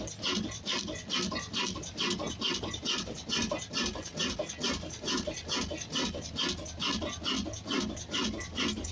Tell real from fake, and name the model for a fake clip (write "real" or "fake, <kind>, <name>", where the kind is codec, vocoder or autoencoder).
real